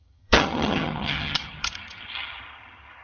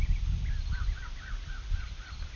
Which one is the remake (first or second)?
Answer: first